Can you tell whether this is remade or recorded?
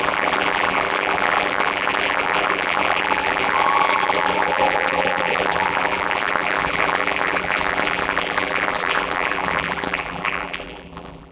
remade